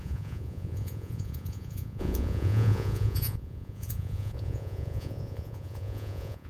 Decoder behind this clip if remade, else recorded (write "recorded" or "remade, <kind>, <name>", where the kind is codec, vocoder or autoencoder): remade, vocoder, Vocos